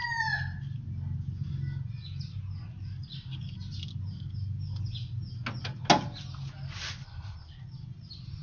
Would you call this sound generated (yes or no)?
no